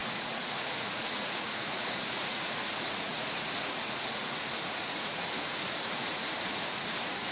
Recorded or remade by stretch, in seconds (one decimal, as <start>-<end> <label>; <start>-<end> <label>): 0.0-7.3 remade